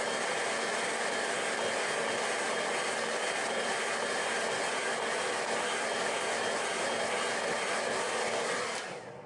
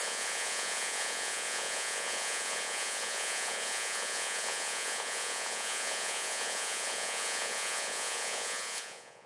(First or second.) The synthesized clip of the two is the second